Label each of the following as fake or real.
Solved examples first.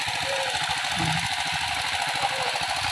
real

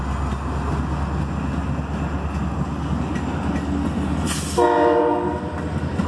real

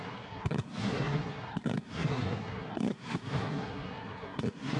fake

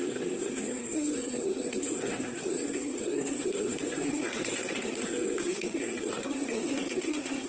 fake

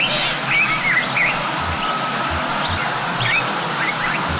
real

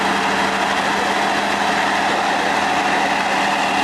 real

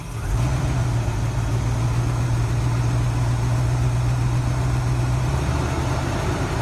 real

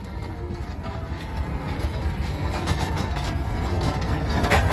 fake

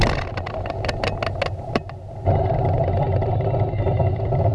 real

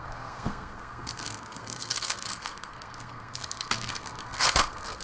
fake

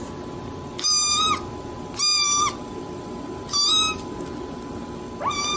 real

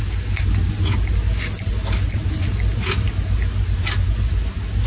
real